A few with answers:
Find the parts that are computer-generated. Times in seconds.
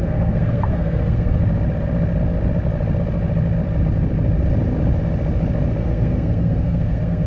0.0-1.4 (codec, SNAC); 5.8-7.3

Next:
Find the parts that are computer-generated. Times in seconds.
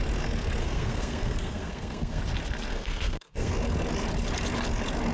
0.6-2.2 (codec, SNAC); 2.7-3.5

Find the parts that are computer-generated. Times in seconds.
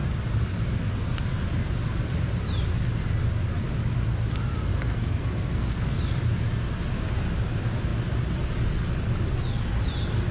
4.7-6.0 (codec, SNAC)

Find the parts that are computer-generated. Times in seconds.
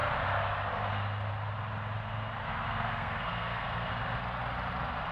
2.4-3.9 (codec, SNAC)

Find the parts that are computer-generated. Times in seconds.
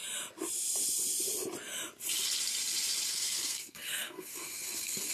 3.1-5.1 (codec, SNAC)